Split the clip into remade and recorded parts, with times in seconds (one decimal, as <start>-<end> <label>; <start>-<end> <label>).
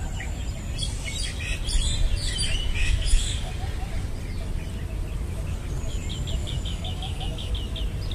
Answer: 0.0-2.8 recorded; 2.8-3.5 remade; 3.5-6.4 recorded; 6.4-7.5 remade; 7.5-8.1 recorded